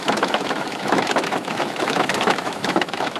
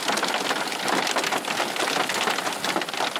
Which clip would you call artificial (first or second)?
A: first